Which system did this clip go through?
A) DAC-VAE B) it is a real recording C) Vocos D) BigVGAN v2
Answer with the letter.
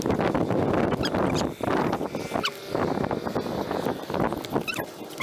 B